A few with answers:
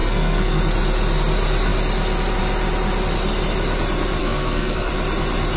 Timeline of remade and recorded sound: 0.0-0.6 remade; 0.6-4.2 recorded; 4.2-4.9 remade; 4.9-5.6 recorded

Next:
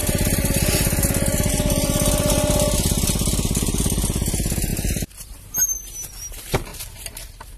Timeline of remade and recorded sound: 0.0-7.6 recorded